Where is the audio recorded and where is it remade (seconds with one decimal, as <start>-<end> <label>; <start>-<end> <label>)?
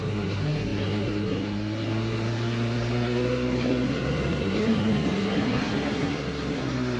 0.0-7.0 remade